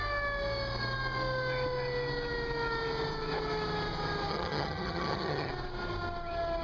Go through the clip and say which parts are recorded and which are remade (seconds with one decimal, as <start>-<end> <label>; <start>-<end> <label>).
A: 0.0-4.3 recorded; 4.3-5.5 remade; 5.5-6.6 recorded